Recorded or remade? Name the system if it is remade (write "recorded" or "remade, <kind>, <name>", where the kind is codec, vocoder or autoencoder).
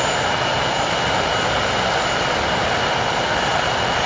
recorded